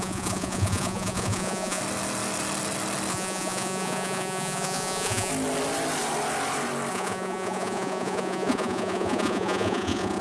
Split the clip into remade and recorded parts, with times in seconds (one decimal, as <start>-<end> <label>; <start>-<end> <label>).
0.0-1.8 remade; 1.8-3.1 recorded; 3.1-5.3 remade; 5.3-6.9 recorded; 6.9-10.2 remade